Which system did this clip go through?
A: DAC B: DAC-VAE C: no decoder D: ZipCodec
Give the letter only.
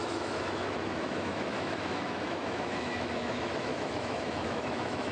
B